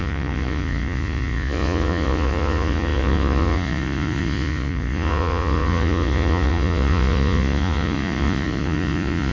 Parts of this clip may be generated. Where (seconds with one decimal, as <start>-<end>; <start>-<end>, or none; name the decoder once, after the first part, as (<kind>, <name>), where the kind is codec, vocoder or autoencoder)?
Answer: 0.0-9.3 (vocoder, Vocos)